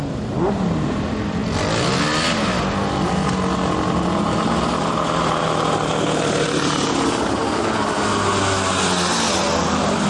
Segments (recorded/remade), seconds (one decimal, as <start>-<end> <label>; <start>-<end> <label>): 0.0-10.1 recorded